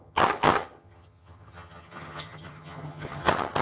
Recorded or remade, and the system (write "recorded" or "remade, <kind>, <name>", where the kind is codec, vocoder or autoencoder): remade, vocoder, HiFi-GAN